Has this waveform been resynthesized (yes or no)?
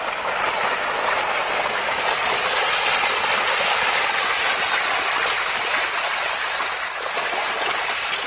no